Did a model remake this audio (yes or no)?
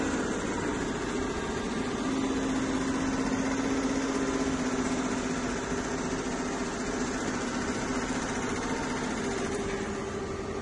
no